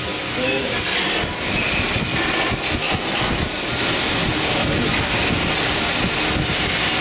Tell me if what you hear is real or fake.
real